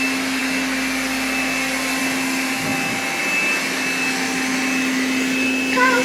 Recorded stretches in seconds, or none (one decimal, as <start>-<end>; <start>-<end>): 0.0-6.0

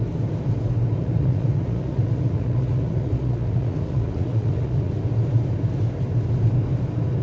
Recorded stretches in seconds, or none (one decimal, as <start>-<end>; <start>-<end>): 0.0-1.0; 4.9-7.2

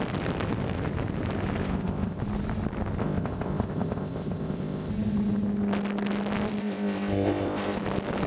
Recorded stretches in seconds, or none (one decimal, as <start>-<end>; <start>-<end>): 0.0-1.6; 2.2-3.0; 4.9-6.6; 7.8-8.3

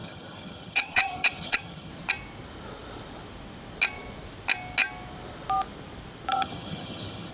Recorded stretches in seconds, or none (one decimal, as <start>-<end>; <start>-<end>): 1.9-6.3

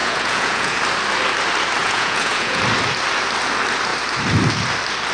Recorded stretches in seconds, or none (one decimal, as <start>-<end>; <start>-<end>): 0.8-1.8; 2.6-5.1

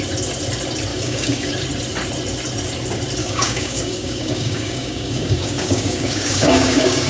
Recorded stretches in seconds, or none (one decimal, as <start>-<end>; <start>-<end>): 0.0-0.9; 1.5-3.2